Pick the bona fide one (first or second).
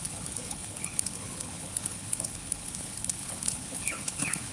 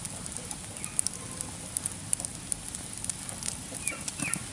second